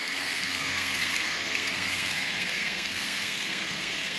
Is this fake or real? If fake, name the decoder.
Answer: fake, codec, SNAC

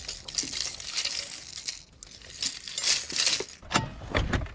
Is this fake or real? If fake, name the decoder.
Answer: real